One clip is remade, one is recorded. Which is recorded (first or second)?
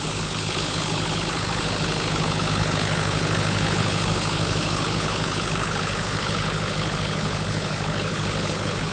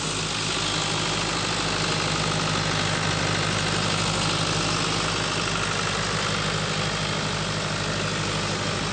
second